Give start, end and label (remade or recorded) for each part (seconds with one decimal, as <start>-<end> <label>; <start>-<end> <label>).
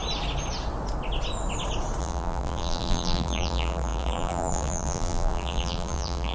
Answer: 0.0-2.0 recorded; 2.0-6.3 remade